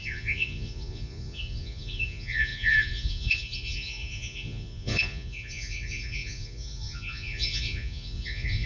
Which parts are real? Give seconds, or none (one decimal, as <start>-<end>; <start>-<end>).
none